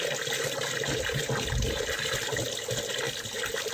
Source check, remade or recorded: recorded